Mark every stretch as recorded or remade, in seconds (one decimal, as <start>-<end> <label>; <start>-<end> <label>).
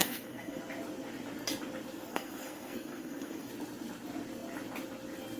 0.0-0.6 remade; 0.6-2.1 recorded; 2.1-3.5 remade; 3.5-5.4 recorded